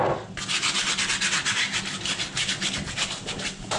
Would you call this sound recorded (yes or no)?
yes